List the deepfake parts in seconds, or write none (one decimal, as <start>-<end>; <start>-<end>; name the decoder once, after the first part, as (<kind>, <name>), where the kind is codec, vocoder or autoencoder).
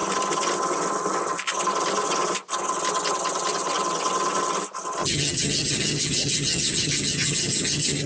5.0-8.1 (vocoder, HiFi-GAN)